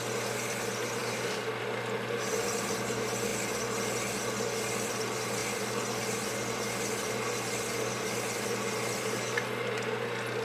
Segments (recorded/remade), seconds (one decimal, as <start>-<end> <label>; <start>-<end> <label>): 0.0-10.4 recorded